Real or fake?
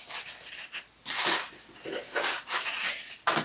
real